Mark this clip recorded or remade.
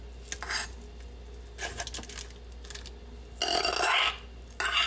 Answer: recorded